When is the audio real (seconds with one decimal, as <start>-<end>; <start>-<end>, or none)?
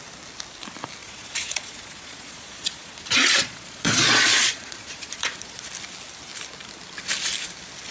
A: 0.0-1.0; 5.7-7.9